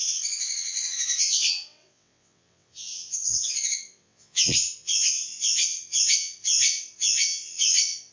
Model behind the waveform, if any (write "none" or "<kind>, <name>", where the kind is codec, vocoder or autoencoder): vocoder, WaveNeXt